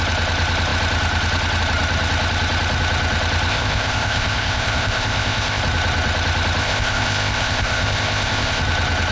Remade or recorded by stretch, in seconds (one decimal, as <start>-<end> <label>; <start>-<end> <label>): 0.0-3.5 recorded; 3.5-5.6 remade; 5.6-6.6 recorded; 6.6-8.6 remade; 8.6-9.1 recorded